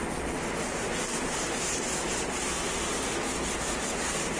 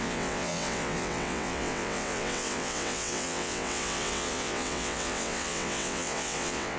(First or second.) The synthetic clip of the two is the second